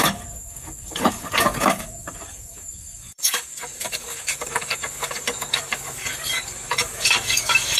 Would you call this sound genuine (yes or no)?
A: no